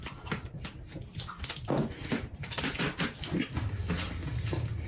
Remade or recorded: recorded